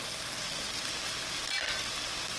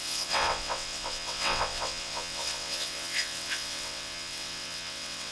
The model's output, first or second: second